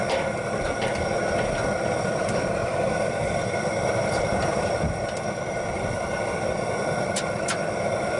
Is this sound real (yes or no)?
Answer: yes